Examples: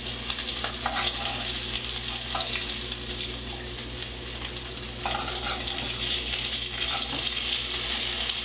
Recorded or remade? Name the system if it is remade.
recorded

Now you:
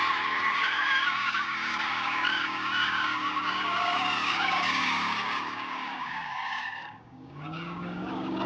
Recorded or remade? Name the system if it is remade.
remade, codec, DAC